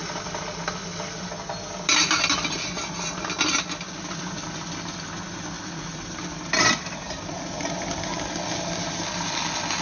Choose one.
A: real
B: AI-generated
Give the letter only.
A